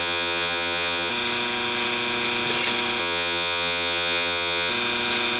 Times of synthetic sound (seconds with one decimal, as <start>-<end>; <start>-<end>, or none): 0.0-1.1; 3.0-4.7